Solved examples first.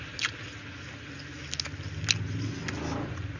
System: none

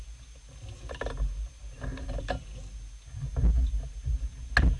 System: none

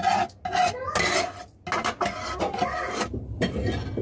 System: none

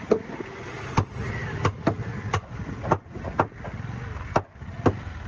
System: none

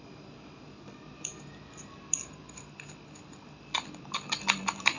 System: none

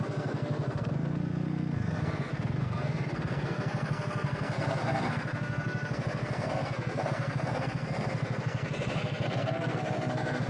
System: codec, SNAC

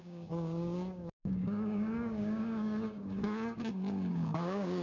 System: codec, DAC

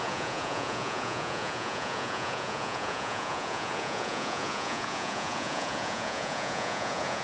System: vocoder, Vocos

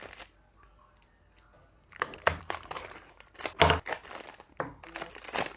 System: none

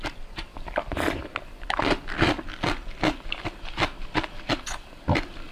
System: none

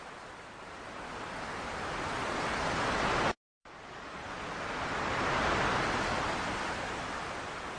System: none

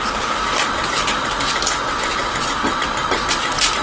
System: none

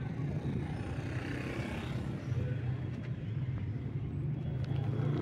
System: none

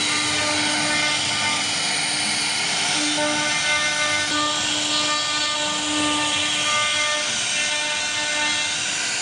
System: none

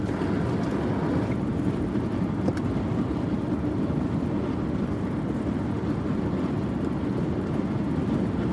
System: none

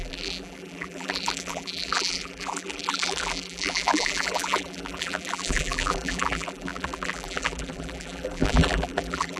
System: vocoder, BigVGAN v2